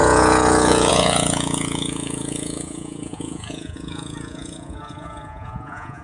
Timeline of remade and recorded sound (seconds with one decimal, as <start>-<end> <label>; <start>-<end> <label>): 0.0-6.0 remade